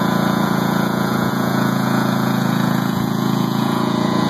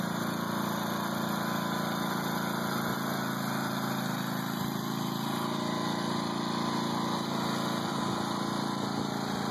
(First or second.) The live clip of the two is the second